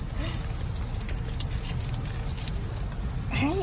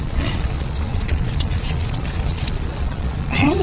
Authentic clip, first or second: first